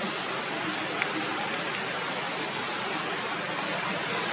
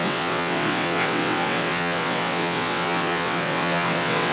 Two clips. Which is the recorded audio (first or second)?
first